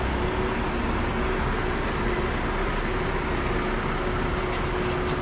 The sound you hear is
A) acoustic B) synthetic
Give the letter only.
A